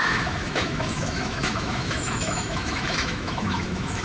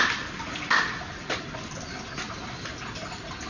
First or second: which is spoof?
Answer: first